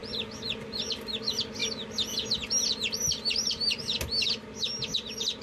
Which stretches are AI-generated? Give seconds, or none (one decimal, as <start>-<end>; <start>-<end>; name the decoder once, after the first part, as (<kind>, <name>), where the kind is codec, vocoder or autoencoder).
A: none